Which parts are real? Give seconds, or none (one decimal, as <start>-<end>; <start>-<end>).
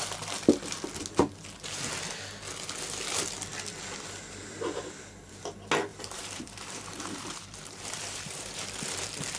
0.0-5.9; 8.5-9.4